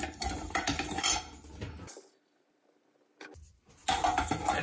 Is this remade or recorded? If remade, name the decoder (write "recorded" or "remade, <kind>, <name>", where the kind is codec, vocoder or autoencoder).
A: recorded